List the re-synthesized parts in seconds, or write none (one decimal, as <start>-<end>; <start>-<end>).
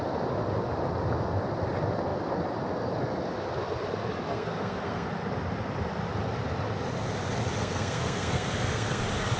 4.3-5.1; 7.6-9.0